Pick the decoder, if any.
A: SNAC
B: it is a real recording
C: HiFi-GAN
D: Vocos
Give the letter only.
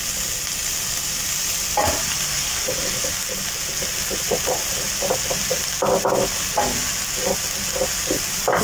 B